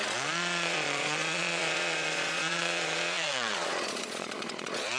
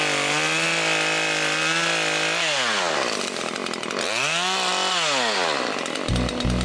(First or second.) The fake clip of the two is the first